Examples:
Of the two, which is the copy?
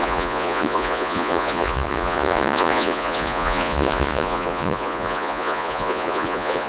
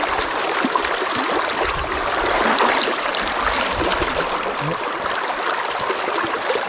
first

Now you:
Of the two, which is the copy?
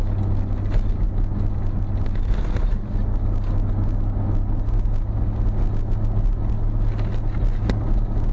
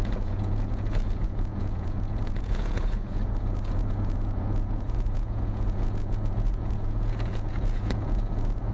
second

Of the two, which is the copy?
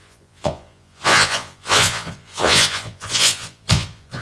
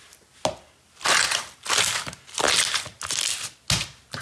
first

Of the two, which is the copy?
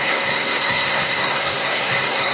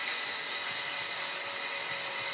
first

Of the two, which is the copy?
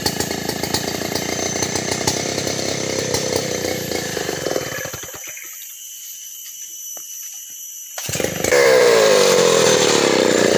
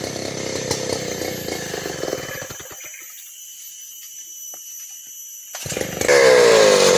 first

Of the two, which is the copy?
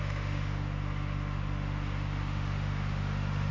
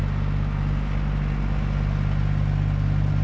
first